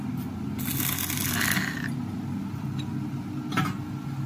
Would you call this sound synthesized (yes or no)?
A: no